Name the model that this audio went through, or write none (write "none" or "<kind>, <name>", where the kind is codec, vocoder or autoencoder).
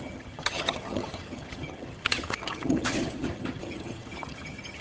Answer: vocoder, HiFi-GAN